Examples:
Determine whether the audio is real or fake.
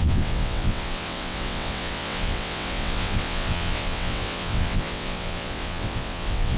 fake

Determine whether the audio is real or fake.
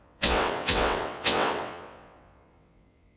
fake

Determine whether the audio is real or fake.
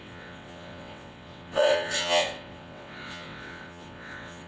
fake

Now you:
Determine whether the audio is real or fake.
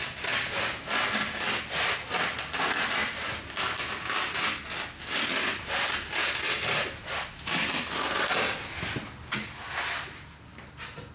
real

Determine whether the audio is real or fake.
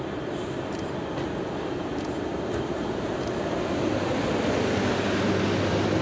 real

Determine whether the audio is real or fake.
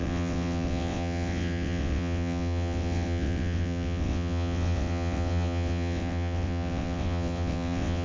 fake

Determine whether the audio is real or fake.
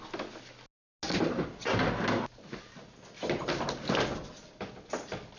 real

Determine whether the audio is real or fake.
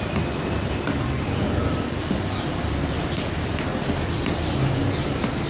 real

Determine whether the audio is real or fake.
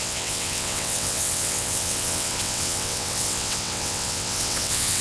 fake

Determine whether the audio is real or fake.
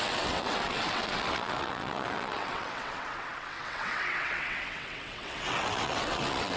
fake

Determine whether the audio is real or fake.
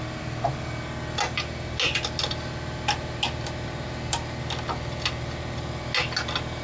real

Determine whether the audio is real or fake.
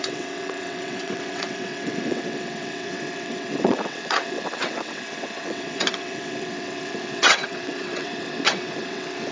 fake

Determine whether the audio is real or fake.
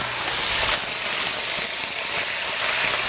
real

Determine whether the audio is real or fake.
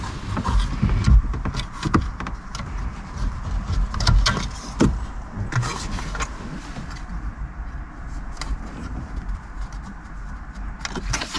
real